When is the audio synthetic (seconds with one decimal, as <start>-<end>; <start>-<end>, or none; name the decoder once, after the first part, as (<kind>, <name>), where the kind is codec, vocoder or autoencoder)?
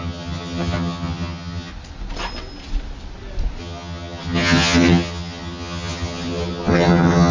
0.0-1.7 (vocoder, HiFi-GAN); 3.6-7.3